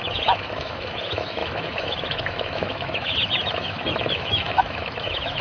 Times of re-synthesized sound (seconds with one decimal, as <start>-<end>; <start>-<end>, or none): 0.0-5.4

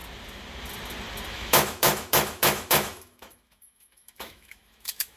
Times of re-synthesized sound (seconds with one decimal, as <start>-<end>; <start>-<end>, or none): 1.3-5.2

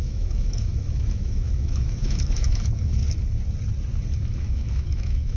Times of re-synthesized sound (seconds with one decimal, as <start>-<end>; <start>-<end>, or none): 0.0-3.0; 4.2-5.4

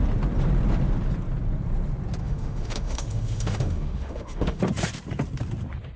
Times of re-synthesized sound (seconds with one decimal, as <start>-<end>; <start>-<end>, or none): 2.2-4.6

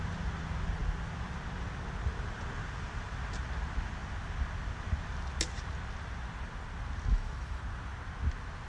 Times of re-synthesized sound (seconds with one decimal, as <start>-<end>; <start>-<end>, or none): 7.1-7.6

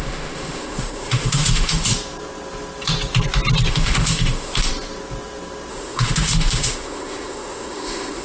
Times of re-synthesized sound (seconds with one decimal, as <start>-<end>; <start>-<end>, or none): 0.0-1.9; 3.7-4.7; 5.7-8.2